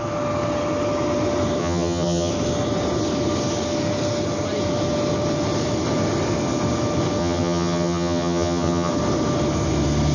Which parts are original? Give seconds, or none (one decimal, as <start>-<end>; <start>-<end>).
0.0-1.6; 2.3-7.2; 8.9-10.1